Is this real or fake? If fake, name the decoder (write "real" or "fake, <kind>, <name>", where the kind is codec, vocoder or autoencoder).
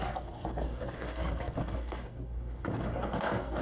fake, codec, SNAC